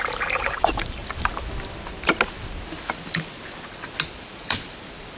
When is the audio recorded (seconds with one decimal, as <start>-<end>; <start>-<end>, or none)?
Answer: 1.0-4.1